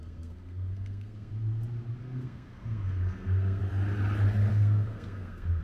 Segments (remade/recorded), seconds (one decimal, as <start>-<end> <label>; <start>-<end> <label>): 0.0-1.3 remade; 1.3-2.0 recorded; 2.0-3.6 remade; 3.6-4.5 recorded; 4.5-5.6 remade

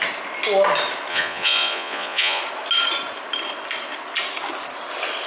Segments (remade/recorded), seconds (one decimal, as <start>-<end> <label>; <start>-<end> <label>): 0.0-1.1 recorded; 1.1-2.4 remade; 2.4-5.3 recorded

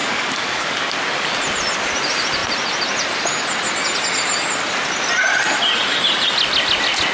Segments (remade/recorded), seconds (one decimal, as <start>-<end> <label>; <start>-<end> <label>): 0.0-0.8 remade; 0.8-7.1 recorded

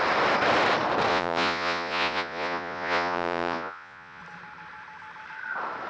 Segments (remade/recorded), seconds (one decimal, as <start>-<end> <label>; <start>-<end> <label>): 0.0-1.1 recorded; 1.1-4.2 remade; 4.2-5.9 recorded

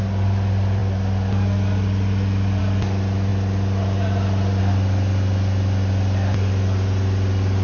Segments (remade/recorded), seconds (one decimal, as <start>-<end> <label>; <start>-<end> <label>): 0.0-7.6 recorded

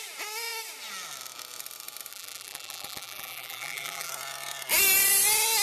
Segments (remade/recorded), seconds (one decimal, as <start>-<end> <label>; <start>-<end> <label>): 0.0-2.1 recorded; 2.1-4.1 remade; 4.1-5.6 recorded